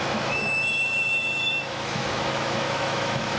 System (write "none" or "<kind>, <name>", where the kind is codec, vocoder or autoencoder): autoencoder, DAC-VAE